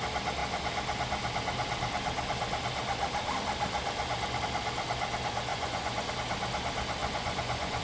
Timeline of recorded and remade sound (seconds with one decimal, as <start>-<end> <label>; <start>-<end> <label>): 0.0-5.5 recorded; 5.5-6.1 remade; 6.1-7.0 recorded; 7.0-7.8 remade